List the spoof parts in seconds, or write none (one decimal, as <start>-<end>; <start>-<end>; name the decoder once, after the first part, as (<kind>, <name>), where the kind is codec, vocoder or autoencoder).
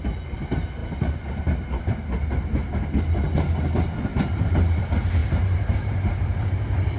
4.1-4.8 (vocoder, BigVGAN v2); 5.2-6.4